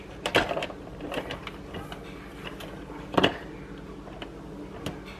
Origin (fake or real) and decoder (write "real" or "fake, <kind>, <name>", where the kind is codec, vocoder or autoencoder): real